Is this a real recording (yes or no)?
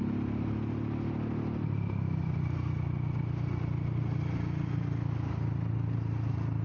yes